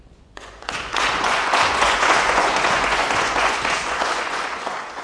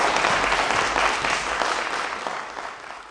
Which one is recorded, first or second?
second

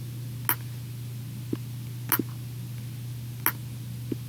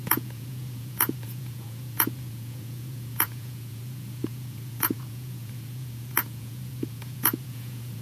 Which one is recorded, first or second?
first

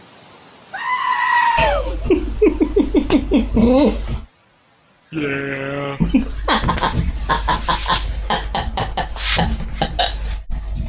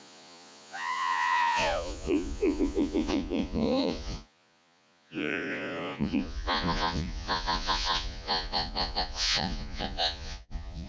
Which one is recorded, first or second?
first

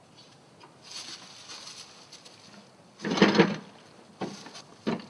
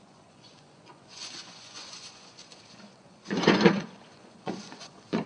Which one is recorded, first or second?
first